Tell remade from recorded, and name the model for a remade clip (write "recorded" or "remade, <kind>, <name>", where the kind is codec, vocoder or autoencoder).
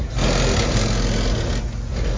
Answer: recorded